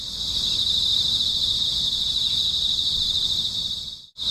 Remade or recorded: recorded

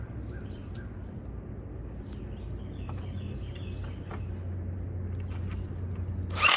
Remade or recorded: recorded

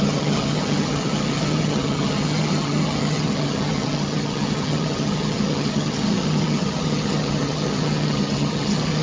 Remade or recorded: remade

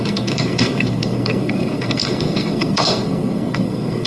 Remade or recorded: remade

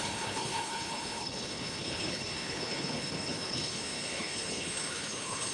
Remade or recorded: remade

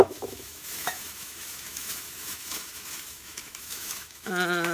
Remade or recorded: remade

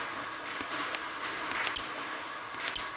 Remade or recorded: recorded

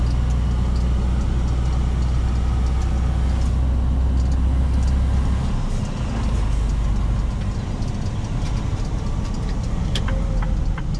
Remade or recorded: recorded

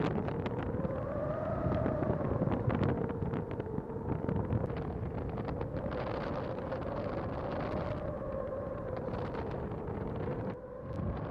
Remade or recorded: recorded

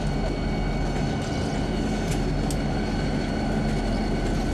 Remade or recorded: recorded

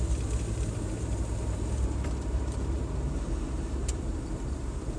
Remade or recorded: remade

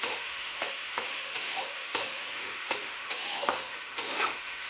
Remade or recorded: remade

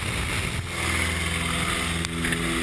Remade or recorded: recorded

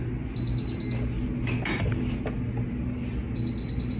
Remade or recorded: recorded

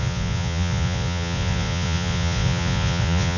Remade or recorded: remade